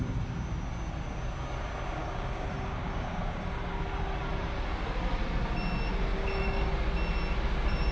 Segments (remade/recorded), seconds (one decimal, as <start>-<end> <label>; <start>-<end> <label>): 0.0-2.0 recorded; 2.0-3.8 remade; 3.8-6.1 recorded; 6.1-6.7 remade; 6.7-7.9 recorded